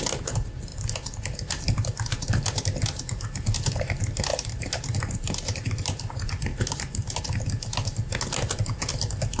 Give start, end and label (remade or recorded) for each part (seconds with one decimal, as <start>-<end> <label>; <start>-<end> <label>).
0.0-4.3 recorded; 4.3-6.0 remade; 6.0-6.5 recorded; 6.5-7.2 remade; 7.2-9.4 recorded